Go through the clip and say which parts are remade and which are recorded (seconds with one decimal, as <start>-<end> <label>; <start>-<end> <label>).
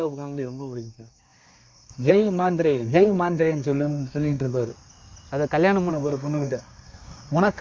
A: 0.0-4.7 remade; 4.7-5.9 recorded; 5.9-7.6 remade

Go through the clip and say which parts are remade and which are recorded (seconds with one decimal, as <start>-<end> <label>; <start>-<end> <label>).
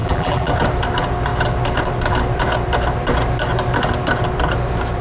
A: 0.0-0.5 remade; 0.5-5.0 recorded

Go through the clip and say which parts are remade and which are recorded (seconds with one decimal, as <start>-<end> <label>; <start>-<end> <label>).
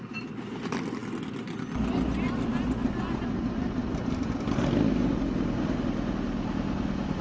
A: 0.0-7.2 recorded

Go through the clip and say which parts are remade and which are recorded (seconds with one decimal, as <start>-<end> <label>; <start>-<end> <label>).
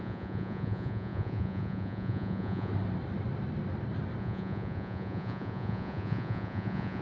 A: 0.0-2.7 remade; 2.7-4.2 recorded; 4.2-7.0 remade